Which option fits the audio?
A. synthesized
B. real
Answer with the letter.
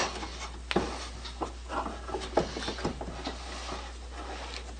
B